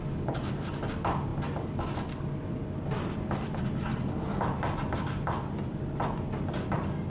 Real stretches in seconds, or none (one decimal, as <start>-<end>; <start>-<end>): 0.0-7.1